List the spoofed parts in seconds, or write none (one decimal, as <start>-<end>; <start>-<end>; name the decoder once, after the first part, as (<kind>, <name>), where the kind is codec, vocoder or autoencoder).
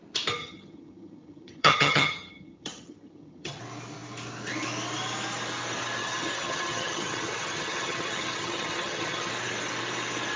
0.4-3.6 (vocoder, HiFi-GAN); 6.0-9.3